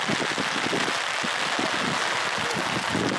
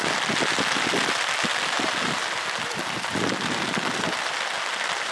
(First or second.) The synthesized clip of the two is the second